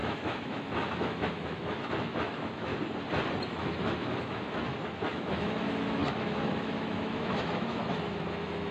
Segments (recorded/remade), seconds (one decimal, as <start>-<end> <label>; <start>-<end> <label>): 0.0-2.7 remade; 2.7-3.4 recorded; 3.4-8.7 remade